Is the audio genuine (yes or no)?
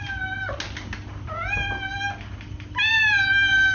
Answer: yes